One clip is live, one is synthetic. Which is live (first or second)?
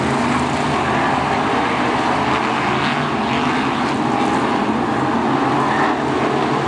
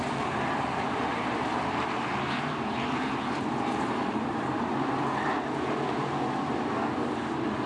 first